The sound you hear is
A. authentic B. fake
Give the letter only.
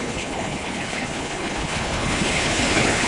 B